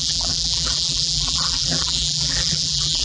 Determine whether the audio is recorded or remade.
remade